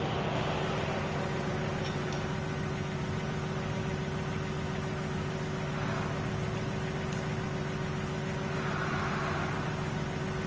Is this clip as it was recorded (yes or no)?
yes